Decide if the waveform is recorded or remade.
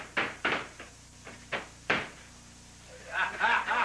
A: remade